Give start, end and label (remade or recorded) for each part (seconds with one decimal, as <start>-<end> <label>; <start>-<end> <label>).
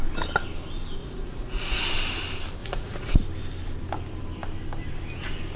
0.0-1.0 recorded; 1.0-1.8 remade; 1.8-2.6 recorded; 2.6-3.1 remade; 3.1-5.6 recorded